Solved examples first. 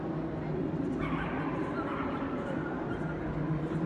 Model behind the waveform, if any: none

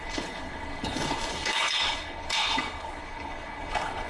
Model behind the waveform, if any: codec, HILCodec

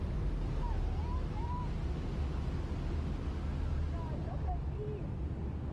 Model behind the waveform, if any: none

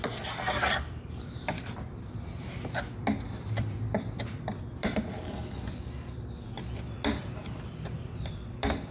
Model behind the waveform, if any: vocoder, BigVGAN v2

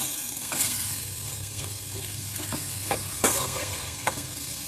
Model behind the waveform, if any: codec, SNAC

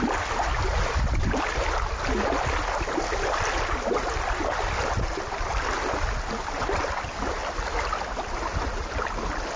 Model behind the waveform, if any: none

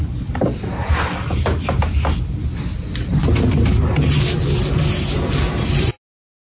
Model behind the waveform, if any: none